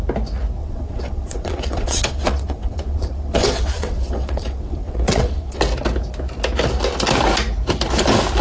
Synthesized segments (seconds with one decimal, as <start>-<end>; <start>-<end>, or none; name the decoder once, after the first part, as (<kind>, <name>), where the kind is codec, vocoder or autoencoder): 0.6-5.6 (vocoder, WaveNeXt)